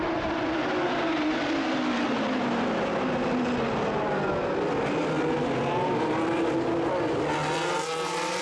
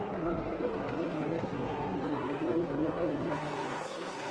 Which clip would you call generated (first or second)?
second